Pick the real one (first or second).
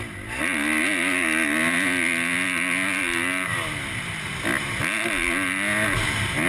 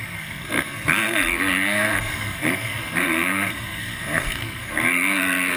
first